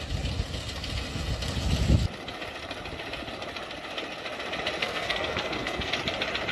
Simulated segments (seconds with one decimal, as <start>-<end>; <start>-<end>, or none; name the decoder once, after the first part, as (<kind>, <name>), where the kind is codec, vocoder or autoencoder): 4.8-5.9 (codec, SNAC)